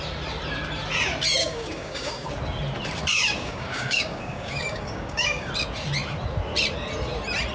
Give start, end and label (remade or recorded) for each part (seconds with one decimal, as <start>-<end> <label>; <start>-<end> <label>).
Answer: 0.0-1.4 recorded; 1.4-2.3 remade; 2.3-3.1 recorded; 3.1-5.5 remade; 5.5-7.5 recorded